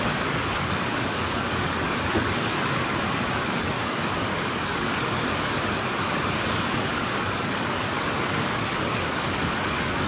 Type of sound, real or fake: fake